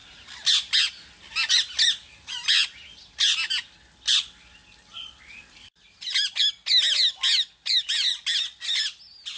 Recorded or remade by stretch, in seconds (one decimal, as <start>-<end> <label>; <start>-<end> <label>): 0.0-9.4 recorded